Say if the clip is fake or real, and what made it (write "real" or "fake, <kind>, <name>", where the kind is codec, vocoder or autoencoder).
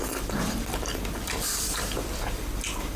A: fake, vocoder, BigVGAN v2